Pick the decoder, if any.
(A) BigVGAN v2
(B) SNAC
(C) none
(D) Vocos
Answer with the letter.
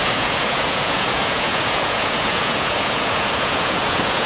D